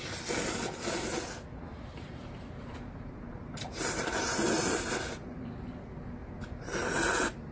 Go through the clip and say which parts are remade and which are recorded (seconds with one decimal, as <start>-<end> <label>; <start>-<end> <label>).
0.0-1.5 recorded; 1.5-5.4 remade; 5.4-6.2 recorded; 6.2-6.7 remade; 6.7-7.5 recorded